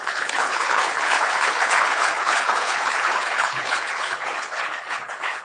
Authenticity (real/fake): fake